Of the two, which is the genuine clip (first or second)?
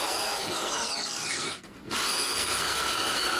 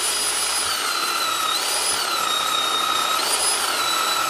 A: second